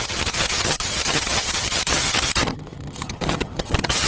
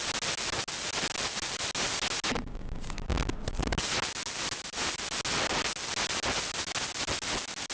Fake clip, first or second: first